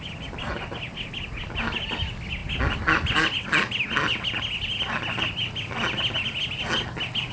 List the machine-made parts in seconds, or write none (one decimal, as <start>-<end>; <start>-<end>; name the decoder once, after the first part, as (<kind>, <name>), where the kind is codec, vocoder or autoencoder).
none